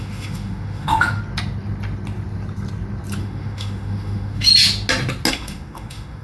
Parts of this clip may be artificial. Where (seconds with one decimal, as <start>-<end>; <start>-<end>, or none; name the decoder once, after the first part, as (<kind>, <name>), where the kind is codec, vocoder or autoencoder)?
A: 0.0-1.2 (autoencoder, DAC-VAE); 3.2-4.5; 5.3-6.2